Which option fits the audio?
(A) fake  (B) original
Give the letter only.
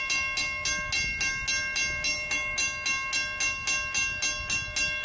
B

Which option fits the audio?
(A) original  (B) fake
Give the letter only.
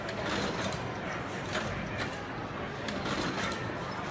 A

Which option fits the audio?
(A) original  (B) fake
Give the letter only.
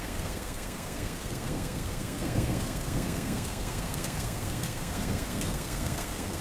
B